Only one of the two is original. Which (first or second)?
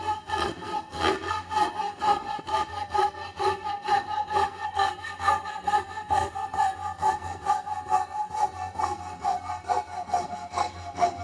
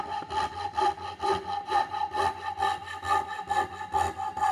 second